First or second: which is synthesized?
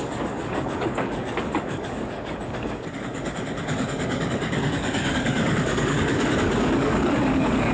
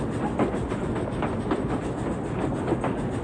first